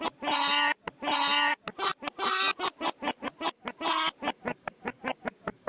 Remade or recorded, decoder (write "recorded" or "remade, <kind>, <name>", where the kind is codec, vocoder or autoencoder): recorded